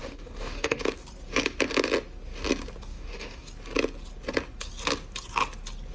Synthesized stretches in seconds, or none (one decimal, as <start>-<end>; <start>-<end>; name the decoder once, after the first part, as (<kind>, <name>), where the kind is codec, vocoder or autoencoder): 0.0-0.8 (codec, DAC); 2.9-3.5

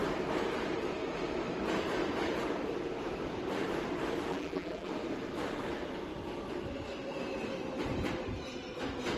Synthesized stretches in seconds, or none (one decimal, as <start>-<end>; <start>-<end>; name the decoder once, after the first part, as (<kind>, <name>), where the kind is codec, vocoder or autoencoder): 4.3-4.9 (vocoder, BigVGAN v2)

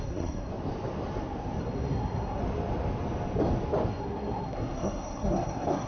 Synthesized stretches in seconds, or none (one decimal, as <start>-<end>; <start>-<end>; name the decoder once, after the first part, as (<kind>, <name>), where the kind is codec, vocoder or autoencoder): 0.0-0.5 (codec, SNAC); 1.6-2.4; 3.9-5.9

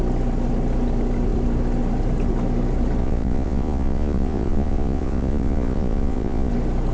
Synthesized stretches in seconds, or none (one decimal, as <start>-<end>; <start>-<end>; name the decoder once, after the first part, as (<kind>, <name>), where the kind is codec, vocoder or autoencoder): 3.0-6.5 (vocoder, Vocos)